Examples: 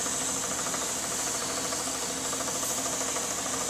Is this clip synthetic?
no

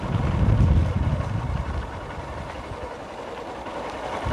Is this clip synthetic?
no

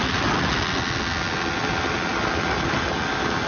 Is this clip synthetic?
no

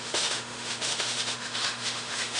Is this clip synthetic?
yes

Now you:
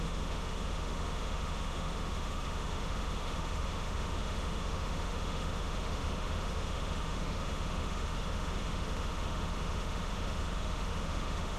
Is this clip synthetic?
yes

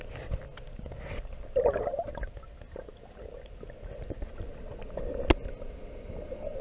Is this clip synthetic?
no